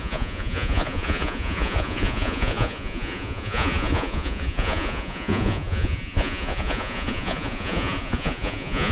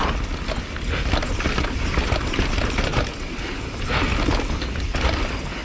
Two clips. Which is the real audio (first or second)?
second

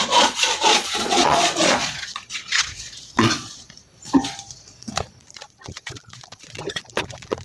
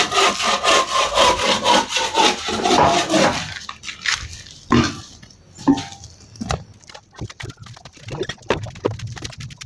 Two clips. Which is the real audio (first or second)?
second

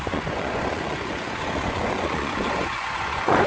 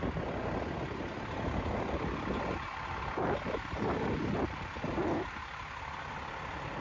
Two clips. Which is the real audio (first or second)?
second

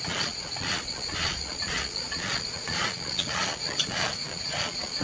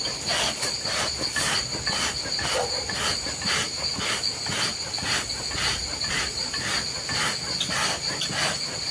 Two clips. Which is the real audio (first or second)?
second